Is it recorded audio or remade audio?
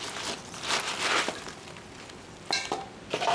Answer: recorded